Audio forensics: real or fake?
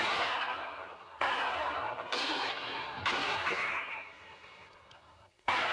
fake